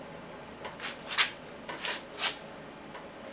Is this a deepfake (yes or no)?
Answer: no